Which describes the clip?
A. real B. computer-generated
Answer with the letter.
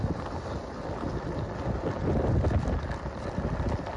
A